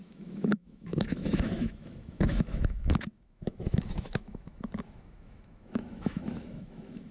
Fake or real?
fake